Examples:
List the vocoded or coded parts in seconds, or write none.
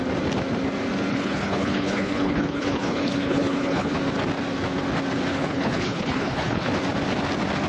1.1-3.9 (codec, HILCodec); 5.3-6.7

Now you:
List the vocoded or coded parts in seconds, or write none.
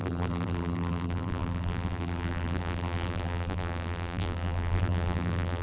0.0-5.6 (vocoder, BigVGAN v2)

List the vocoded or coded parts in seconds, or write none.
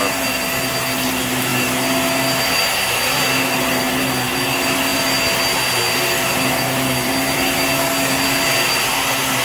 none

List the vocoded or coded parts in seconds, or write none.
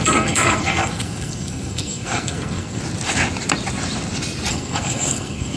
0.0-2.8 (codec, SNAC); 4.5-5.6